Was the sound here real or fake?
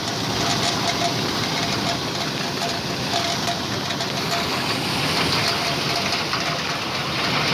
real